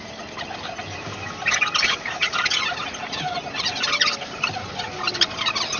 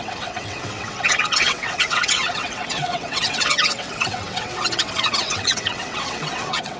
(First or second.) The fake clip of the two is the second